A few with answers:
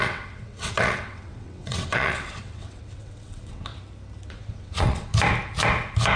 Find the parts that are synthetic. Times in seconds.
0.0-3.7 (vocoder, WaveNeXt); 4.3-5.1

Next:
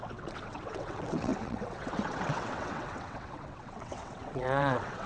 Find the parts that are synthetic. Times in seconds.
0.0-5.1 (vocoder, WaveNeXt)

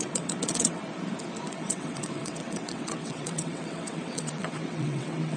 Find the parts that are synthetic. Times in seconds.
0.0-0.8 (vocoder, WaveNeXt); 1.5-5.4

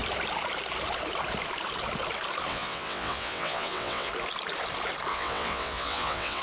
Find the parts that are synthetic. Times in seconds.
2.5-4.1 (vocoder, WaveNeXt); 5.1-6.4

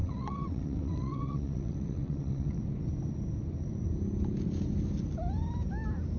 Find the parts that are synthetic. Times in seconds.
0.0-2.6 (vocoder, WaveNeXt)